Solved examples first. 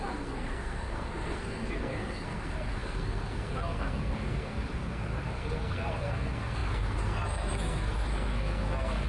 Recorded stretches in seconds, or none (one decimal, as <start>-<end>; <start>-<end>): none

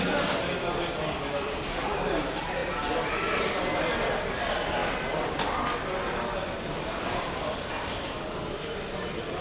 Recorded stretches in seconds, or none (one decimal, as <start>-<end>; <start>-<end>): 0.0-9.4

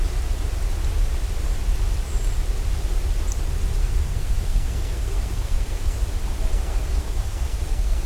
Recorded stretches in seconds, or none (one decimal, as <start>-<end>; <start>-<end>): 0.0-3.8; 6.0-6.5

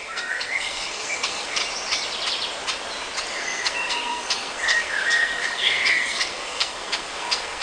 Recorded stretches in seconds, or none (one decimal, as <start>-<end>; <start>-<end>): 1.6-3.3